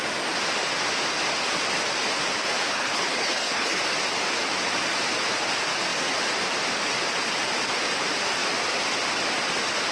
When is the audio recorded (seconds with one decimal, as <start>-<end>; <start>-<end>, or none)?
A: 0.0-2.7; 3.8-9.9